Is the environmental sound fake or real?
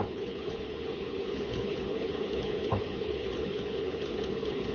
fake